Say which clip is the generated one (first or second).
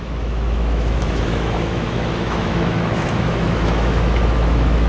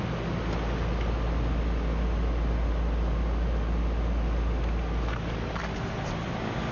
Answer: first